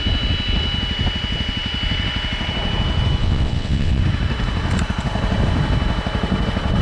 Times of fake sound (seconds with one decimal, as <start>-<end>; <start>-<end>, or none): 3.2-4.0